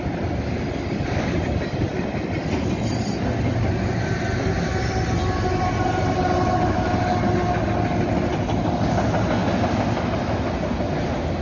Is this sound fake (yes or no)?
no